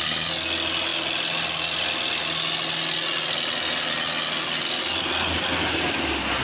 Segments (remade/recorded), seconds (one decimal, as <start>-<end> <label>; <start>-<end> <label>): 0.0-6.4 recorded